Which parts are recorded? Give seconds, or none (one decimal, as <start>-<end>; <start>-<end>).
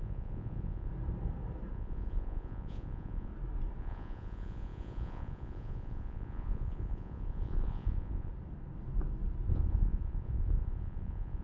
0.9-1.7; 3.3-3.8; 8.3-9.5